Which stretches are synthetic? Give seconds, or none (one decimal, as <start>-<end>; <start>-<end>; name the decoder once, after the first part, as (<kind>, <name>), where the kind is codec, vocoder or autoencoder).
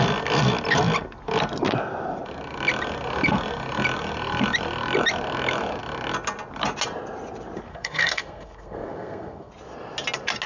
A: 7.7-9.5 (codec, SNAC)